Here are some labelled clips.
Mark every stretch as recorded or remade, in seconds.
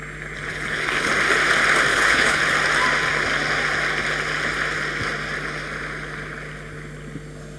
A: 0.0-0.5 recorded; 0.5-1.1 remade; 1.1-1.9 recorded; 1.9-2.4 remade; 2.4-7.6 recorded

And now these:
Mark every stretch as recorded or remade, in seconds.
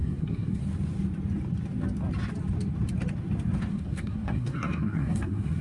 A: 0.0-0.6 remade; 0.6-3.7 recorded; 3.7-5.6 remade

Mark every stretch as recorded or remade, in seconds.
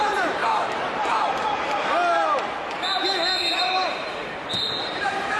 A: 0.0-0.4 remade; 0.4-3.6 recorded; 3.6-4.2 remade; 4.2-4.9 recorded; 4.9-5.4 remade